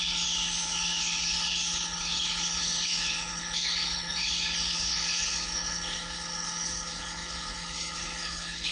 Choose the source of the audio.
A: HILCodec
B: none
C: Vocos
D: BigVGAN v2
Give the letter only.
A